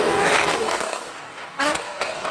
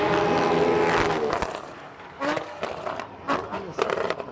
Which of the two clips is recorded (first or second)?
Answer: second